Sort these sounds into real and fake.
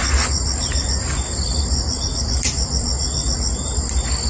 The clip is real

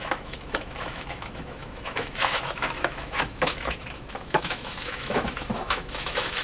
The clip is fake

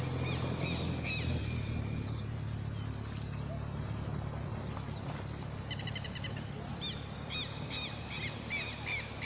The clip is real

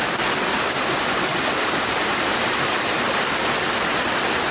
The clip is real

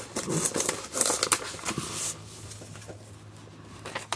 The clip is real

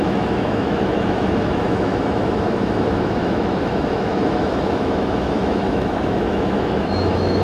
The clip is fake